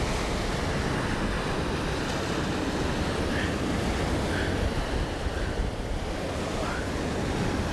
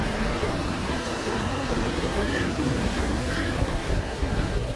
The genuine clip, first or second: first